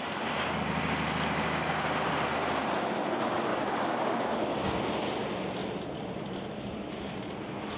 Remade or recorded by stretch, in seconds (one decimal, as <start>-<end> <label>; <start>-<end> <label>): 0.0-3.5 recorded; 3.5-4.8 remade; 4.8-7.8 recorded